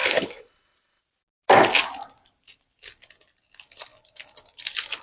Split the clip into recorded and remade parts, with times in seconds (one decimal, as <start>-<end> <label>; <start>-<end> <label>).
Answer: 0.0-1.0 remade; 1.0-5.0 recorded